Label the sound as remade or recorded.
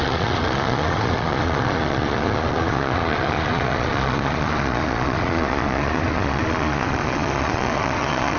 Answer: remade